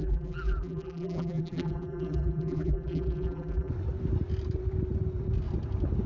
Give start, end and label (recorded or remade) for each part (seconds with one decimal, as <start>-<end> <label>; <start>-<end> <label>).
0.0-3.7 remade; 3.7-6.1 recorded